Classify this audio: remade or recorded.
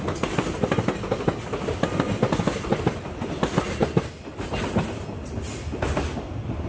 recorded